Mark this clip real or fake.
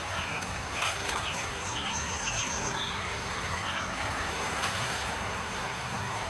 fake